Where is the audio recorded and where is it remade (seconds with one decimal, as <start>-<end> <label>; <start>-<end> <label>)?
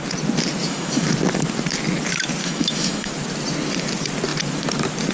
0.0-0.6 recorded; 0.6-1.1 remade; 1.1-2.4 recorded; 2.4-3.1 remade; 3.1-5.1 recorded